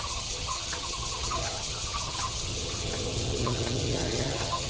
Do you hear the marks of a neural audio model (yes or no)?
yes